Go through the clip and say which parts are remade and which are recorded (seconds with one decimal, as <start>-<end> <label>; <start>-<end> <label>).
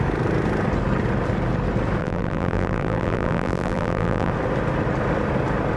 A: 0.0-2.0 recorded; 2.0-4.3 remade; 4.3-5.8 recorded